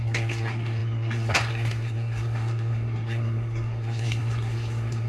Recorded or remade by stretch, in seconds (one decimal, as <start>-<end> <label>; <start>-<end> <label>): 0.0-5.1 remade